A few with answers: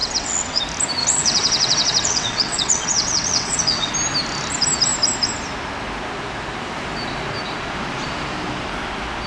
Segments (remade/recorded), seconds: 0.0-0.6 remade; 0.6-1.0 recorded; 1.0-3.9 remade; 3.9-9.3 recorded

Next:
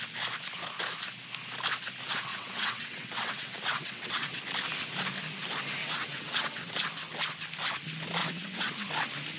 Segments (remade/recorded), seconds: 0.0-2.3 recorded; 2.3-4.4 remade; 4.4-5.8 recorded; 5.8-6.7 remade; 6.7-8.2 recorded; 8.2-8.9 remade; 8.9-9.4 recorded

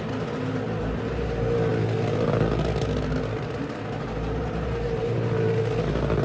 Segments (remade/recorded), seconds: 0.0-6.2 recorded

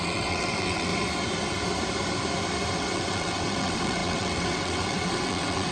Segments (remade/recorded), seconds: 0.0-0.9 remade; 0.9-2.7 recorded; 2.7-5.7 remade

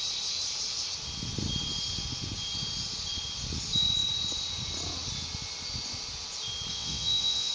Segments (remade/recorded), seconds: 0.0-6.7 recorded; 6.7-7.5 remade

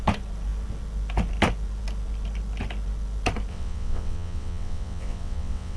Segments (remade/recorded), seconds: 0.0-3.5 recorded; 3.5-5.8 remade

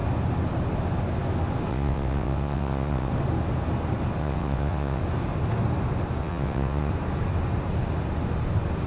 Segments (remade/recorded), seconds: 0.0-1.7 recorded; 1.7-3.1 remade; 3.1-4.2 recorded; 4.2-5.0 remade; 5.0-6.2 recorded; 6.2-6.9 remade; 6.9-8.9 recorded

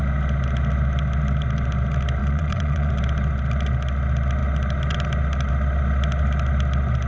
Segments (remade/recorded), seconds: 0.0-2.2 recorded; 2.2-2.9 remade; 2.9-7.1 recorded